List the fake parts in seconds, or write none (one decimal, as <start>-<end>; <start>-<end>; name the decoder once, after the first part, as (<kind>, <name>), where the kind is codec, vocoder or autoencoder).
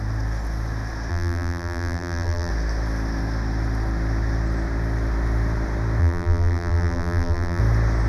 1.1-2.5 (vocoder, BigVGAN v2); 6.0-7.6